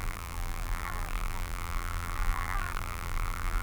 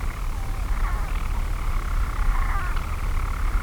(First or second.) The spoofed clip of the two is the first